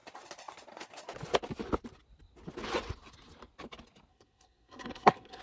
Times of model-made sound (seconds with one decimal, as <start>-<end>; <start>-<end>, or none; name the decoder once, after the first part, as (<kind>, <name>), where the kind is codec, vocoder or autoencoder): 4.1-5.4 (codec, SNAC)